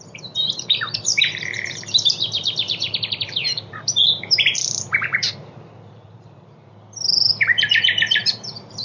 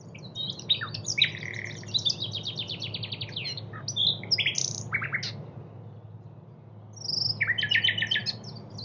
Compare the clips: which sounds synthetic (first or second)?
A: first